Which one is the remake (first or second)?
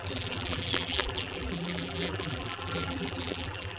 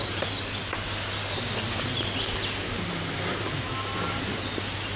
first